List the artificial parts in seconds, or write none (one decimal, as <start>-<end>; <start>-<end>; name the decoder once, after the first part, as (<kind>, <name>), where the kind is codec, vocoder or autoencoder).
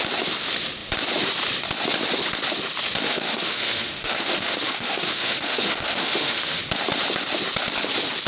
3.1-6.6 (autoencoder, DAC-VAE)